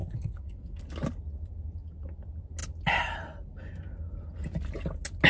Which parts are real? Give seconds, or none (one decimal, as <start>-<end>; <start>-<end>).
0.8-5.3

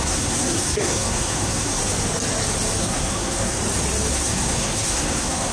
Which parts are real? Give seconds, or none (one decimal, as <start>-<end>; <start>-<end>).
1.8-2.8; 3.6-4.1

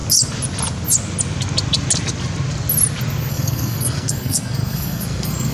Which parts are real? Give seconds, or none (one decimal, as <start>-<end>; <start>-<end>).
0.0-3.3

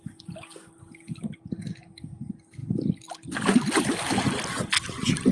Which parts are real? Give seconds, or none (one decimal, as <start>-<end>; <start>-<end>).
0.0-5.3

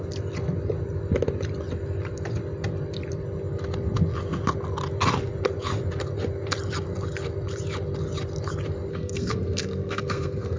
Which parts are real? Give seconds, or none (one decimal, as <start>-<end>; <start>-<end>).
0.0-8.9

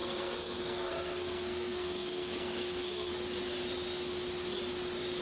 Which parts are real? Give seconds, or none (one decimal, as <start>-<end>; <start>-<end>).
3.1-5.2